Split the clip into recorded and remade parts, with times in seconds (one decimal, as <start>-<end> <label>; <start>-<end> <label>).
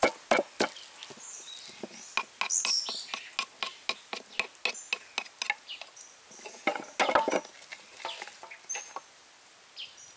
0.0-10.2 recorded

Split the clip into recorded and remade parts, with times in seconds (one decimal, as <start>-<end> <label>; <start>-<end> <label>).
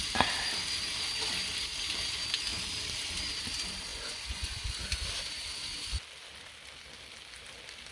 0.0-3.9 recorded; 3.9-4.7 remade; 4.7-7.9 recorded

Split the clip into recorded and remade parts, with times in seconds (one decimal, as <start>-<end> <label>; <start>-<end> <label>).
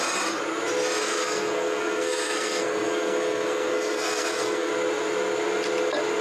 0.0-1.0 recorded; 1.0-4.7 remade; 4.7-6.2 recorded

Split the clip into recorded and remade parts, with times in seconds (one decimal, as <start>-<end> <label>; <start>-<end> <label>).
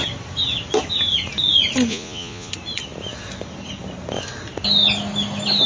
0.0-1.9 recorded; 1.9-2.5 remade; 2.5-5.7 recorded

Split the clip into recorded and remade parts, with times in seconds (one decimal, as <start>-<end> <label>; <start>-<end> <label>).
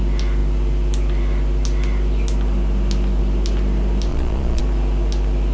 0.0-4.1 recorded; 4.1-4.6 remade; 4.6-5.5 recorded